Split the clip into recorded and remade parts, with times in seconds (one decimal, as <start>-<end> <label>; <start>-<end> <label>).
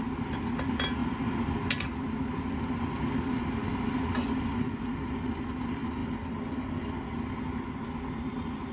0.0-8.7 recorded